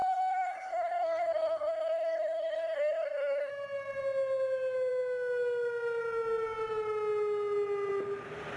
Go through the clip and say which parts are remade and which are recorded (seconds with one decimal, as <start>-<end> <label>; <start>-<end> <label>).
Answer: 0.0-3.5 remade; 3.5-8.6 recorded